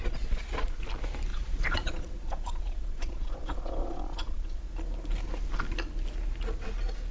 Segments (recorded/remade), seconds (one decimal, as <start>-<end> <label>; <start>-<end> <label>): 0.0-0.8 remade; 0.8-1.3 recorded; 1.3-4.7 remade; 4.7-7.1 recorded